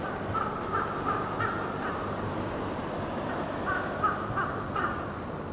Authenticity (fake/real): real